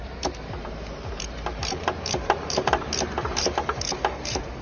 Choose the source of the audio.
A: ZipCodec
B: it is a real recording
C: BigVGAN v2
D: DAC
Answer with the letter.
C